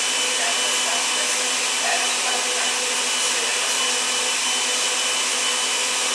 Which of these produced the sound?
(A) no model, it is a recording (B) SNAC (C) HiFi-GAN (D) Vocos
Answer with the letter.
A